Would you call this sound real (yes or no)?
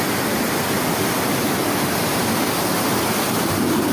yes